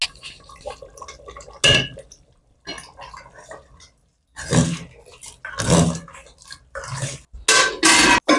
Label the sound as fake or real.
real